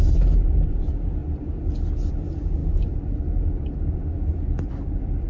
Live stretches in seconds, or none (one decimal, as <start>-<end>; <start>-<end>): 0.0-5.3